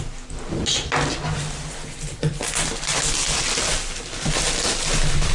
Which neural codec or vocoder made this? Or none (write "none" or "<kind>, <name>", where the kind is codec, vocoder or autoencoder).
none